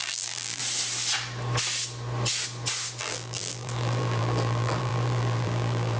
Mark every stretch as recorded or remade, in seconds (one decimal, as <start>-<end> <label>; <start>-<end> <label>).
0.0-0.6 remade; 0.6-3.0 recorded; 3.0-6.0 remade